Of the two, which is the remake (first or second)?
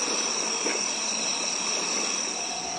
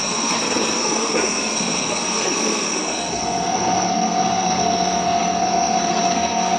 second